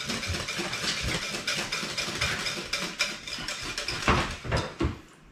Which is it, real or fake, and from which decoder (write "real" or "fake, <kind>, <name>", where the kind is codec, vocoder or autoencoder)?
real